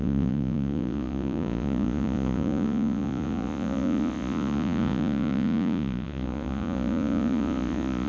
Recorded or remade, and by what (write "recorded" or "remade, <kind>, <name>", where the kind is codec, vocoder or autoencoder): remade, vocoder, Vocos